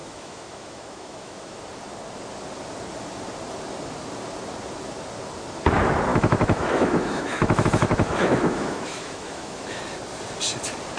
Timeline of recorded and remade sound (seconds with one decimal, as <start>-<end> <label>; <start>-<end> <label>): 0.0-1.6 remade; 1.6-6.1 recorded; 6.1-9.8 remade; 9.8-11.0 recorded